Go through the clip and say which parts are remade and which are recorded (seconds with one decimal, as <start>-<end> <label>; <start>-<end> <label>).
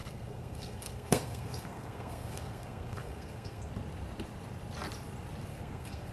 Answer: 0.0-3.7 remade; 3.7-5.5 recorded; 5.5-6.1 remade